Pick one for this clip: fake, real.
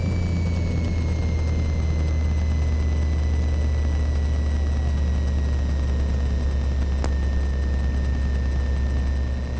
real